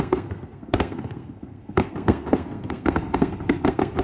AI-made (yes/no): yes